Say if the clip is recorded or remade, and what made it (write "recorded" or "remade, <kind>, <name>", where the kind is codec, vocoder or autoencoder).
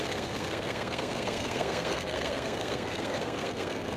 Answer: remade, codec, SNAC